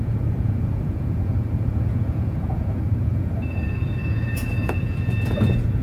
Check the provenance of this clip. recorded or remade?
remade